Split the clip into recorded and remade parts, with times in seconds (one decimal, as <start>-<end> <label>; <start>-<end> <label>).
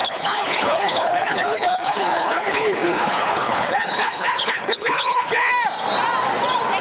0.0-5.5 remade; 5.5-6.8 recorded